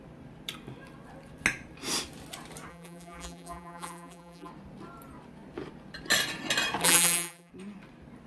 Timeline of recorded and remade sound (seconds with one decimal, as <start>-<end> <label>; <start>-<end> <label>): 0.0-2.7 recorded; 2.7-4.5 remade; 4.5-6.8 recorded; 6.8-7.5 remade; 7.5-8.3 recorded